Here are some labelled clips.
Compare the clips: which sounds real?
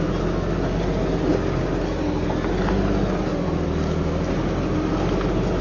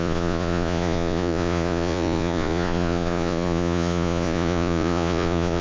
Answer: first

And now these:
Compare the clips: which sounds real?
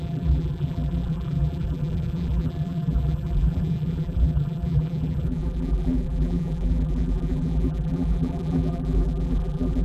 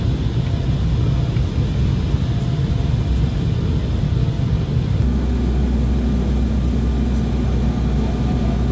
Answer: second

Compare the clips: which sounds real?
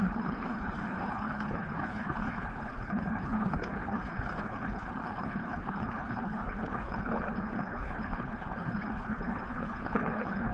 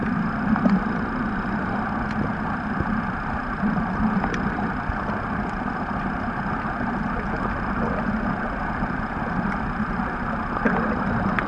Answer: second